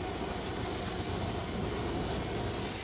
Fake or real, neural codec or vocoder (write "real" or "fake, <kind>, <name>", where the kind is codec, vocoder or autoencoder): real